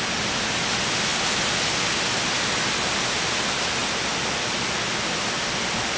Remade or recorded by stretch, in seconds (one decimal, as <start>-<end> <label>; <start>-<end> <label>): 0.0-6.0 recorded